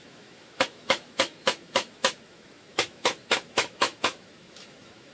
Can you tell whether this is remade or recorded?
remade